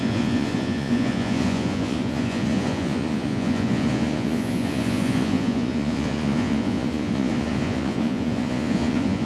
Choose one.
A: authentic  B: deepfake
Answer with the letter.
B